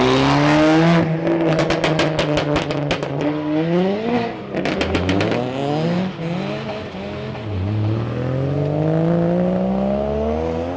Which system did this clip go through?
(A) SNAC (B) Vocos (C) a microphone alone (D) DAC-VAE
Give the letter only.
C